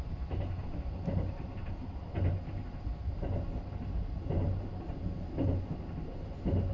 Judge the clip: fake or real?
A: real